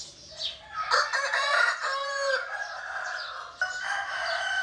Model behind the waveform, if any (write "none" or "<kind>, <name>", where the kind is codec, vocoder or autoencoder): none